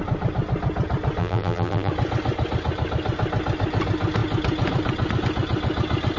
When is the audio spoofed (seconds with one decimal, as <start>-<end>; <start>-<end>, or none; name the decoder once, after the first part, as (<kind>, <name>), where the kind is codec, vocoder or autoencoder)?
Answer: 1.2-1.9 (vocoder, BigVGAN v2)